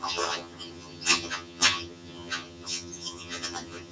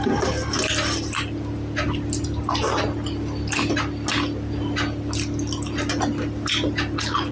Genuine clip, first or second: second